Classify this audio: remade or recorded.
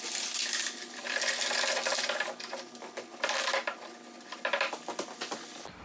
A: recorded